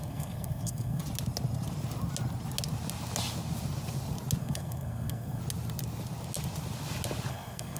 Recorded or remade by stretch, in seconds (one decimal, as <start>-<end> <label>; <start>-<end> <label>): 0.0-1.0 remade; 1.0-4.4 recorded; 4.4-5.4 remade; 5.4-7.3 recorded; 7.3-7.8 remade

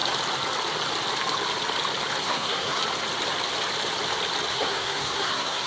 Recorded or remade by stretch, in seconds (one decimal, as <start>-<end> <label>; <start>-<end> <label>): 0.0-2.2 recorded; 2.2-2.8 remade; 2.8-4.5 recorded; 4.5-5.7 remade